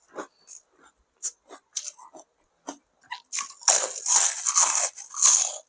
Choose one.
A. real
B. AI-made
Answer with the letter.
A